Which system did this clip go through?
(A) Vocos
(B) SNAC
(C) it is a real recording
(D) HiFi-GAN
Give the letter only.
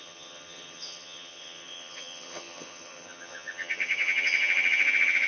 D